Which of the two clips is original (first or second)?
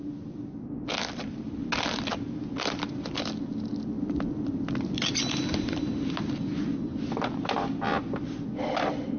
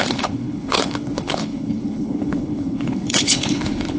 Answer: first